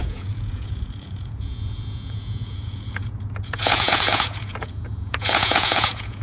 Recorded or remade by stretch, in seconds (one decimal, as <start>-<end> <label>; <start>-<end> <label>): 0.0-6.2 remade